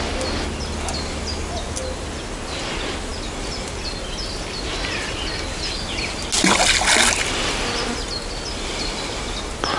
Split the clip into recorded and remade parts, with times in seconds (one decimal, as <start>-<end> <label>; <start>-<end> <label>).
0.0-9.8 recorded